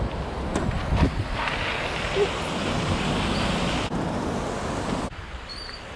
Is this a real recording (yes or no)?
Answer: yes